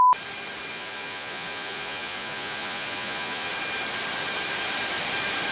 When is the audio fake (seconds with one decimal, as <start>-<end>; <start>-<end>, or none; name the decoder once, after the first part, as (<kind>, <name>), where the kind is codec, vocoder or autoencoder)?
0.7-3.5 (vocoder, Vocos)